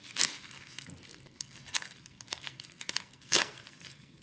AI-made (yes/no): yes